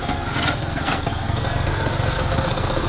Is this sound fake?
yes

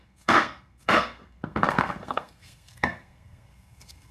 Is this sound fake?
yes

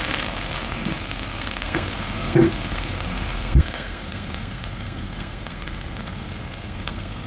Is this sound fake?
yes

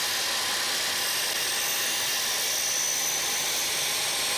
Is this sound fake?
no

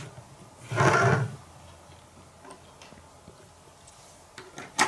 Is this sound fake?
no